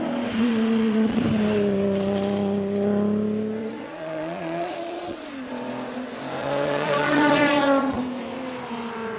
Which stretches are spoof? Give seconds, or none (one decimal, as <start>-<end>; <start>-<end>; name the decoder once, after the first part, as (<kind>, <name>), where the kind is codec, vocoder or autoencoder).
0.4-1.2 (vocoder, Vocos); 3.6-5.3; 6.4-8.0